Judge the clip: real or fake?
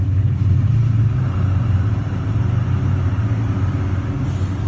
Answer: real